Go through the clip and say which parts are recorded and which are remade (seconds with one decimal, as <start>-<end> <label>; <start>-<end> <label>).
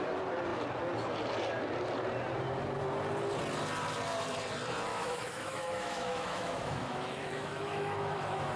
0.0-4.9 recorded; 4.9-8.6 remade